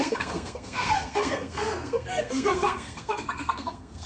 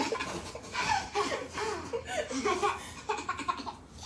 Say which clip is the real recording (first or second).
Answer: second